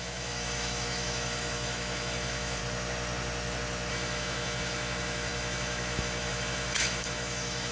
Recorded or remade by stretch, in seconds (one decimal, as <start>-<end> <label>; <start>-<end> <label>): 0.0-2.6 remade; 2.6-3.9 recorded; 3.9-7.7 remade